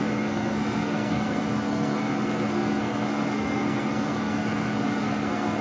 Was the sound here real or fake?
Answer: fake